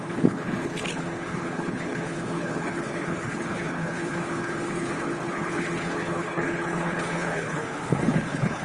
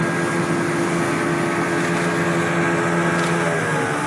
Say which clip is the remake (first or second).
first